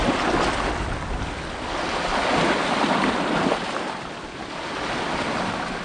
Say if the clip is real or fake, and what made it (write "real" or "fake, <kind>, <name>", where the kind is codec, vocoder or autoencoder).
real